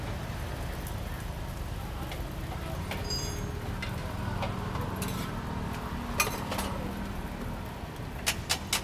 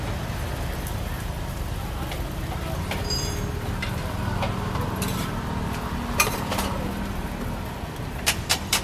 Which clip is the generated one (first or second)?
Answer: second